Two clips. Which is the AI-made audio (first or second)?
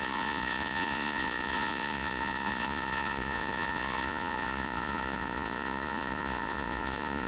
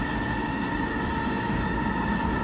first